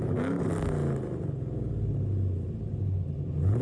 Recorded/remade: recorded